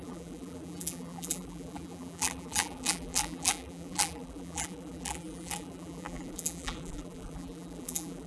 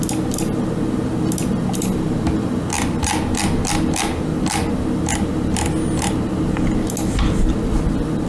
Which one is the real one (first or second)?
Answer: second